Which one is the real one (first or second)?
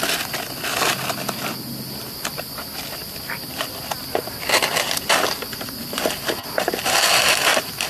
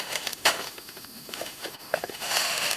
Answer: first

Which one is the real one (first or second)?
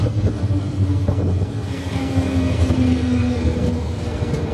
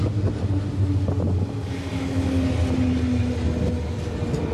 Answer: second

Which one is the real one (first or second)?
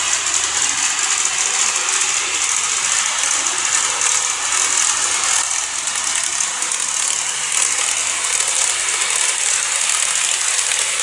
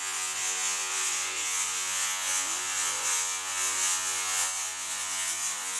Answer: first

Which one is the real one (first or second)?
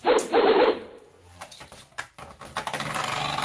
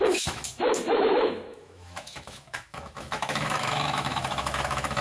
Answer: first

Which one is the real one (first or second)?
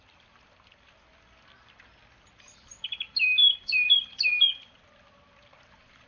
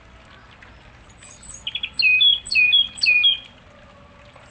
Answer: second